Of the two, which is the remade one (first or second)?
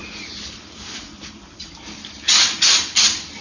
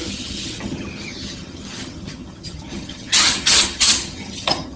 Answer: second